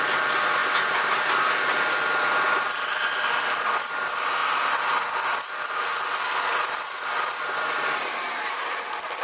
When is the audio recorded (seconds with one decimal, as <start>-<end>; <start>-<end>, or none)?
0.0-9.2